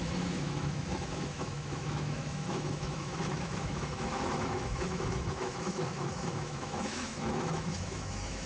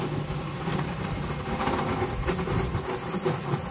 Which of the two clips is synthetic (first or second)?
first